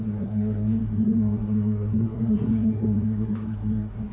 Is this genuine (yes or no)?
no